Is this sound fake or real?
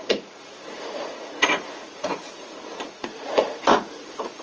fake